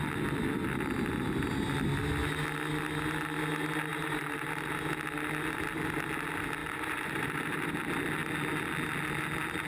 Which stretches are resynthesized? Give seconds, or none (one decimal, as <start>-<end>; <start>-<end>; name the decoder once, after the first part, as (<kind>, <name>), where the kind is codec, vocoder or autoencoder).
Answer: 3.9-4.8 (vocoder, BigVGAN v2); 6.6-7.7